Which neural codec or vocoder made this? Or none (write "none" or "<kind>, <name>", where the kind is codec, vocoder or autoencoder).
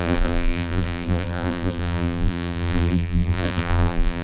vocoder, BigVGAN v2